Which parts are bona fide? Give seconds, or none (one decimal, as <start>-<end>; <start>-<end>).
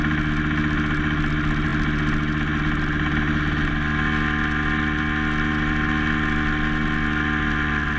0.0-8.0